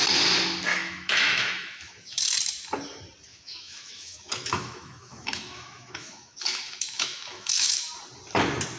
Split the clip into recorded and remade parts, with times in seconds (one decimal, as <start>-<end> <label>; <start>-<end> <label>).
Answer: 0.0-0.7 recorded; 0.7-2.2 remade; 2.2-3.3 recorded; 3.3-7.9 remade; 7.9-8.8 recorded